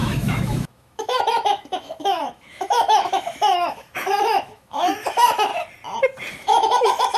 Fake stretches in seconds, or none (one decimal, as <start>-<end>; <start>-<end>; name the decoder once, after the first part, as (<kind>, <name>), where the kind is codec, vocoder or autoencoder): 0.0-5.5 (autoencoder, DAC-VAE); 6.3-7.2

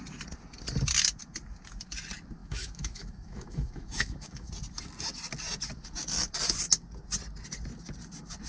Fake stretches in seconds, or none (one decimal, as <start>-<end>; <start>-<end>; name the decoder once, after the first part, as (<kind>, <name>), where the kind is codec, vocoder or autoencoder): 2.4-4.5 (autoencoder, DAC-VAE)